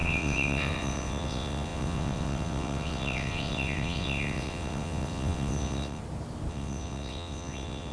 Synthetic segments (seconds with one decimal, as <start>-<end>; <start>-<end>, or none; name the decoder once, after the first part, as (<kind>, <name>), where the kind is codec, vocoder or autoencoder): 0.0-6.0 (vocoder, WaveNeXt); 6.5-7.9